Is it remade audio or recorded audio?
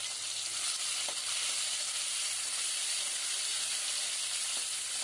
recorded